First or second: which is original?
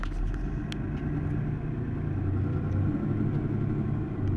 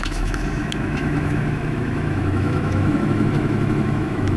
first